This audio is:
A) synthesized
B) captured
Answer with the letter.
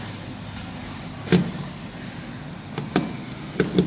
B